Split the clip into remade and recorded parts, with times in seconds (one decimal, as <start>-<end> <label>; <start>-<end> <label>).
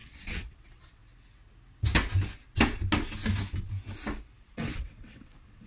0.0-1.0 remade; 1.0-4.4 recorded; 4.4-5.7 remade